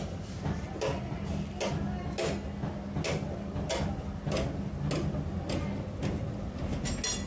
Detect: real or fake real